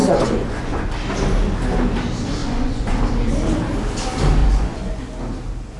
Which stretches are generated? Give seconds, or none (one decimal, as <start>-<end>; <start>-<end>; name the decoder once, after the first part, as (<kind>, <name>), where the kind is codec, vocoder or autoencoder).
0.0-0.9 (vocoder, Vocos); 2.4-3.0; 4.4-5.0